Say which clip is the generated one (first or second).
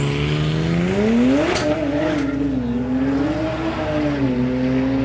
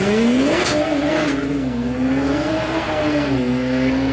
second